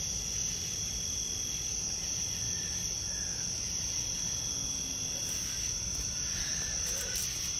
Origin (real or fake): real